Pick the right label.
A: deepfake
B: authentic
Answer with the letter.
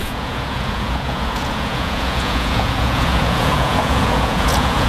A